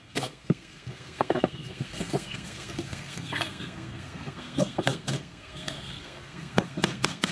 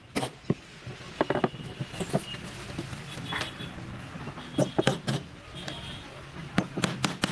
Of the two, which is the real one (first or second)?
second